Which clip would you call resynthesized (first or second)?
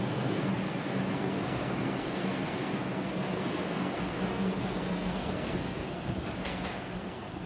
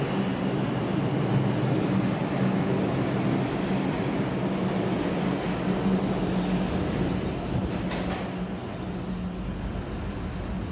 first